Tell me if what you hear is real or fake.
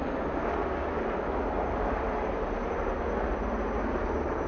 real